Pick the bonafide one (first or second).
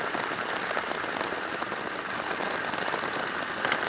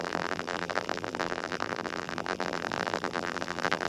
first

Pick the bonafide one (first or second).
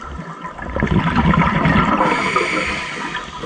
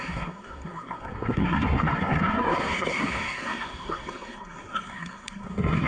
first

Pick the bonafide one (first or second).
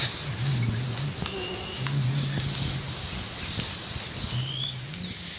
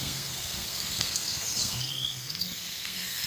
first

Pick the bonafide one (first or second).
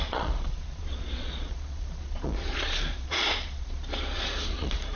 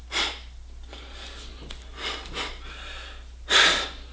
second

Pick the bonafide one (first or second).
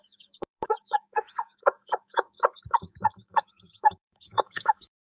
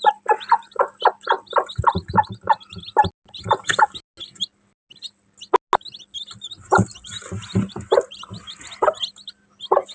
second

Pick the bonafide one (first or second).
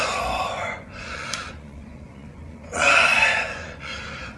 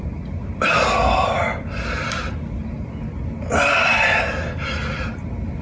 second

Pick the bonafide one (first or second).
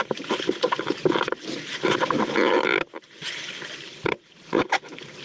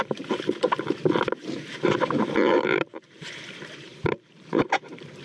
first